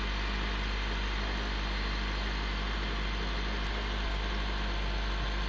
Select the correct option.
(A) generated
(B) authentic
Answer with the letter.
B